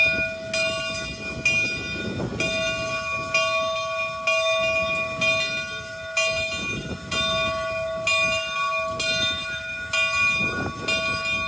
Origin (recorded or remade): recorded